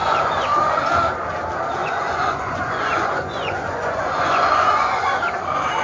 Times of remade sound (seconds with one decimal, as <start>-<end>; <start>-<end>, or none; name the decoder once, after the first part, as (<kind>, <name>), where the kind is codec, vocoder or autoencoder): 0.0-0.7 (vocoder, Vocos); 1.8-5.2